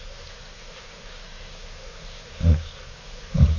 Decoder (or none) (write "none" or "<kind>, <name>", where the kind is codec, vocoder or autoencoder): codec, SNAC